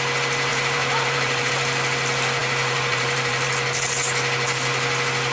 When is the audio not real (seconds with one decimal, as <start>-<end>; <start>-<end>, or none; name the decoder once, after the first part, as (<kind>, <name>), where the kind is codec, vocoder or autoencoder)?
0.5-1.5 (vocoder, BigVGAN v2); 2.4-3.5